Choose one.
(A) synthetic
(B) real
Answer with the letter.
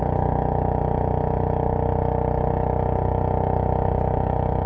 B